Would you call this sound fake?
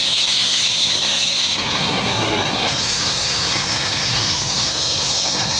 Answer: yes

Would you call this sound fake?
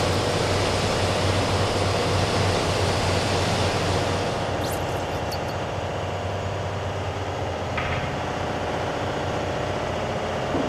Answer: no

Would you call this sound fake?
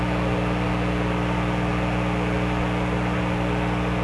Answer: no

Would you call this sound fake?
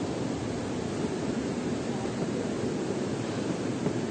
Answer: no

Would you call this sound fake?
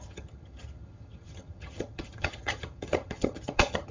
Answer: yes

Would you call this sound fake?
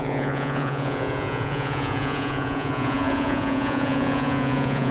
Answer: yes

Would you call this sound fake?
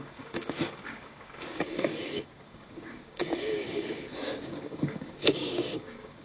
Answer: yes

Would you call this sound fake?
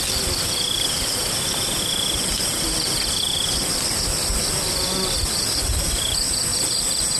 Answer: no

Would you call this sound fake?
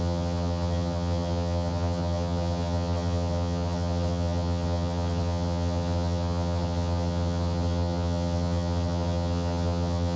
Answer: yes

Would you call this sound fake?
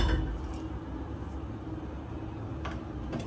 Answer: no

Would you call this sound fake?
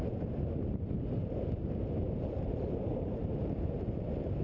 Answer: yes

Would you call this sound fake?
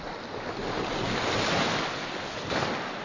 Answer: no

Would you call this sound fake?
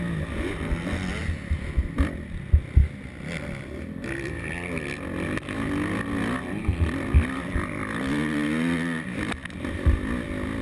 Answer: no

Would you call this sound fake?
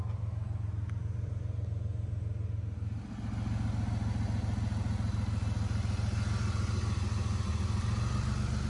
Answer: no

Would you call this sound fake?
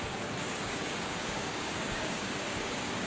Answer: yes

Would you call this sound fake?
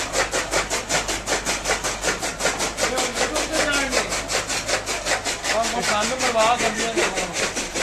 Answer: no